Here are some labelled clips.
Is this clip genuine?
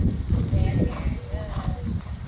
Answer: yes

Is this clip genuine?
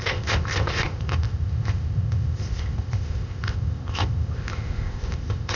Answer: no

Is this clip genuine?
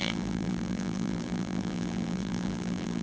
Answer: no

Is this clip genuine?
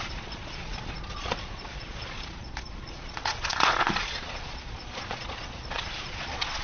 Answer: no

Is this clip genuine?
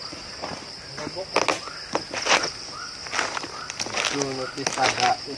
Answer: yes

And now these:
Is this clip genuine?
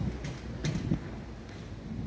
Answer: yes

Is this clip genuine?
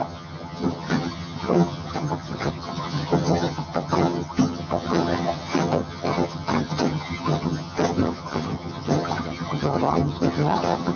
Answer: no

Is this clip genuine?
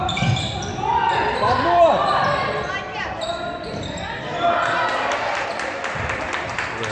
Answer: no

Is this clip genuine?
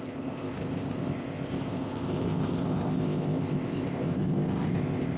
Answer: no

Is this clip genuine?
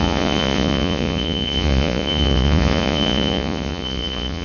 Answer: no